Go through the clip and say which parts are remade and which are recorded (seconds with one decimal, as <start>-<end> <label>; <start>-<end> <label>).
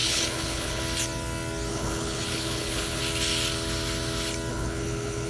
0.0-0.8 remade; 0.8-1.7 recorded; 1.7-3.0 remade; 3.0-4.5 recorded; 4.5-5.3 remade